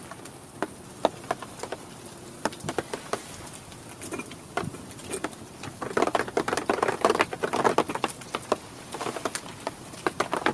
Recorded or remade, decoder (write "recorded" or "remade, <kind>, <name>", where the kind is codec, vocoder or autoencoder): recorded